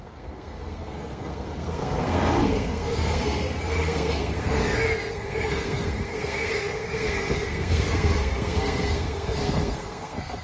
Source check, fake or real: fake